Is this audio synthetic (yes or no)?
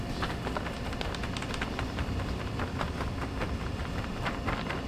yes